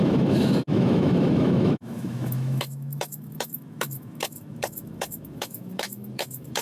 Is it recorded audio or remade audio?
remade